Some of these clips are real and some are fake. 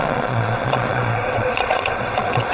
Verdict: fake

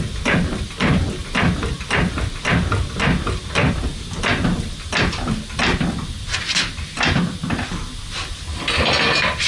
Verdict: real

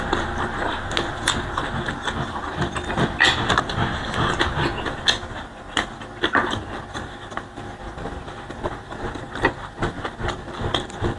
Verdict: real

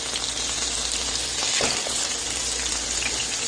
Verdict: real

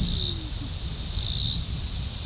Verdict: real